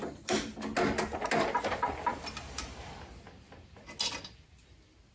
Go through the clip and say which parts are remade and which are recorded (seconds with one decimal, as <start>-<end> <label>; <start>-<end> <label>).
0.0-2.1 recorded; 2.1-2.8 remade; 2.8-5.1 recorded